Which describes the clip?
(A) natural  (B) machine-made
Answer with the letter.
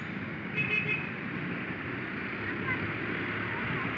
A